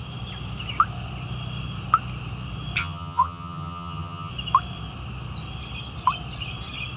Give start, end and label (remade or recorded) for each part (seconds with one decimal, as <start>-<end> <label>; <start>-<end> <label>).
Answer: 0.0-2.8 recorded; 2.8-4.3 remade; 4.3-7.0 recorded